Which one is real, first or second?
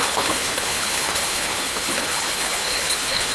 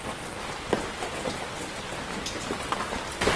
second